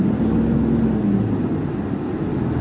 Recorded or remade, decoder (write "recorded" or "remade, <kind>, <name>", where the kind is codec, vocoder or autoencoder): recorded